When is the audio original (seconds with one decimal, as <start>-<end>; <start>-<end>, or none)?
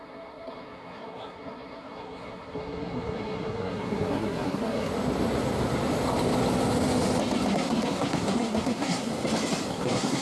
4.9-7.5; 9.1-9.7